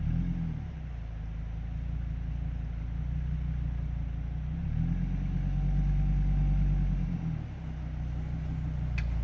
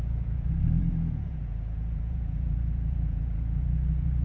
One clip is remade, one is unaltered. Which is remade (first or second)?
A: second